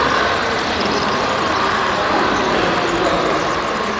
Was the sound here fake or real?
real